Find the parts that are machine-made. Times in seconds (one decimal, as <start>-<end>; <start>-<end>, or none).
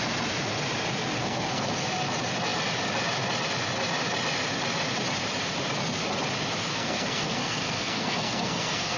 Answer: 1.2-1.7; 6.7-9.0